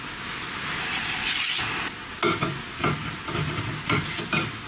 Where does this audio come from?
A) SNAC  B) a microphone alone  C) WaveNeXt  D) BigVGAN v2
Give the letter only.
B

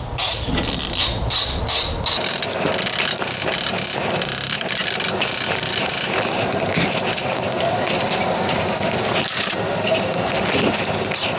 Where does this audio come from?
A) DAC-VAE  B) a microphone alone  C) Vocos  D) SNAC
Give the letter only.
B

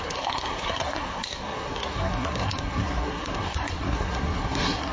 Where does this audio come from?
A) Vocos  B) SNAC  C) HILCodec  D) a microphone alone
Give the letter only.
B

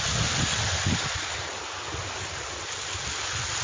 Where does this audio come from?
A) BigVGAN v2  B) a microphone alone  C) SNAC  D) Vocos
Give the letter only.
B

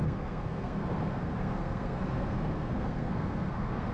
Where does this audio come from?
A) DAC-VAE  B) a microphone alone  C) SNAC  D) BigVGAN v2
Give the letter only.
C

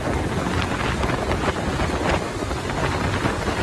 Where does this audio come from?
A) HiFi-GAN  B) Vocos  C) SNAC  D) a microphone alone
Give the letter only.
D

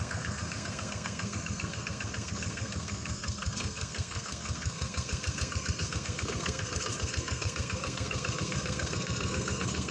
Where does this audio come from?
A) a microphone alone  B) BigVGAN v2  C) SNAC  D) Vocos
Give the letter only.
C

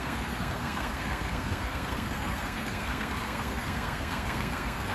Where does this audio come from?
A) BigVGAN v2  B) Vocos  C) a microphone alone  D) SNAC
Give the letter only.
D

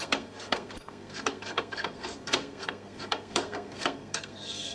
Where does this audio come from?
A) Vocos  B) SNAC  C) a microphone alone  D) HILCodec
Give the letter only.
B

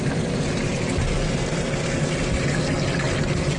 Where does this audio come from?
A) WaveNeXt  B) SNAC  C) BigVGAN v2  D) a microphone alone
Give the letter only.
D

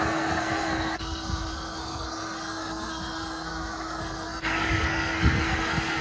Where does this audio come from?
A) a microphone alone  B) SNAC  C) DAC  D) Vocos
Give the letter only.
B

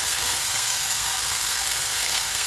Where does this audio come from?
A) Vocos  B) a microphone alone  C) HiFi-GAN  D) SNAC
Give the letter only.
D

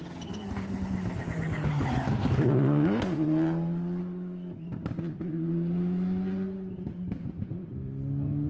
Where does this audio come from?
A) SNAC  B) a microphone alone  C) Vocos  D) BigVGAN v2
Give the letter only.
B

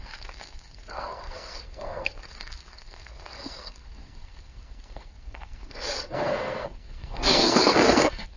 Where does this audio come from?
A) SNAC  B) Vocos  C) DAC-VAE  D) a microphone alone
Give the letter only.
A